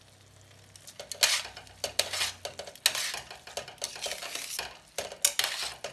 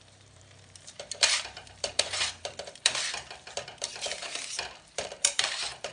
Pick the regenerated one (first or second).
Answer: second